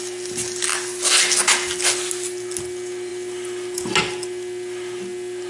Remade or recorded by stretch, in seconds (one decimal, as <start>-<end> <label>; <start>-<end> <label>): 0.0-5.5 recorded